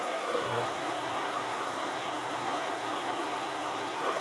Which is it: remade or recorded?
remade